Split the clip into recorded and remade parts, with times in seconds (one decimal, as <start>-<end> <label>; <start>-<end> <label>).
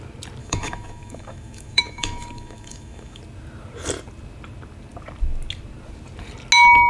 0.0-0.4 recorded; 0.4-3.2 remade; 3.2-6.9 recorded